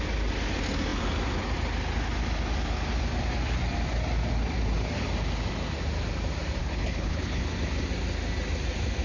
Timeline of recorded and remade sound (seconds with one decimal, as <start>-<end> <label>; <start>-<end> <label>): 0.0-6.6 recorded; 6.6-7.4 remade; 7.4-9.0 recorded